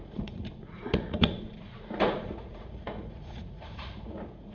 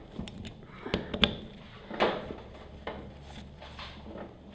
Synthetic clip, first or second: first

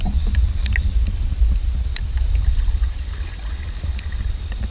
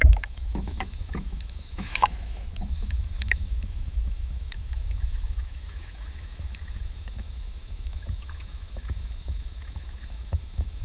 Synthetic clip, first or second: second